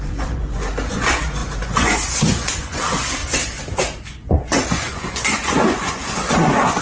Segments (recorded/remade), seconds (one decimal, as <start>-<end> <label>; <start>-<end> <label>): 0.0-6.8 remade